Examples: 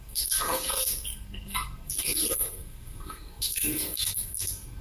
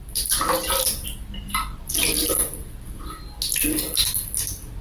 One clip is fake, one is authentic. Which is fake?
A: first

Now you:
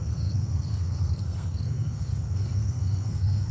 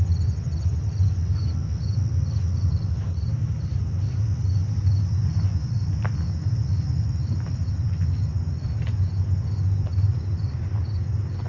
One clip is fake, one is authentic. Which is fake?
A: first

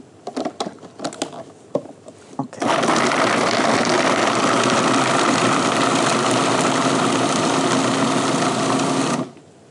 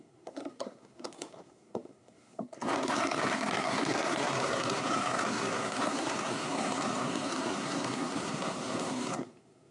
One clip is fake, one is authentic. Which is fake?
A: second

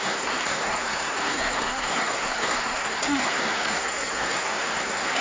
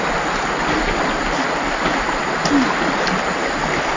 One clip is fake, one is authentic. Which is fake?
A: first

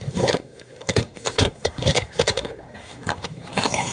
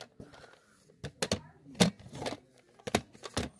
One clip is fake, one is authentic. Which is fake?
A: first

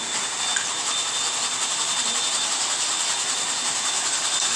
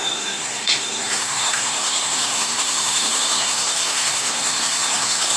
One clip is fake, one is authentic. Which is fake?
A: second